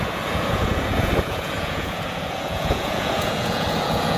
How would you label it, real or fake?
fake